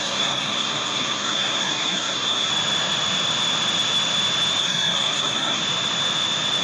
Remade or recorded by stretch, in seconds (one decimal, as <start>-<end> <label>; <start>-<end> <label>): 0.0-2.5 remade; 2.5-4.6 recorded; 4.6-5.6 remade; 5.6-6.6 recorded